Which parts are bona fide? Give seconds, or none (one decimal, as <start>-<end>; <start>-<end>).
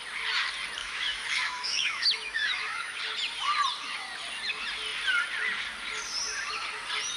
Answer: 0.0-0.8; 3.0-7.2